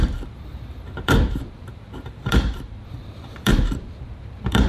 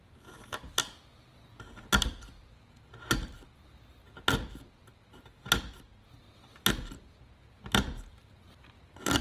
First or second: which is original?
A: second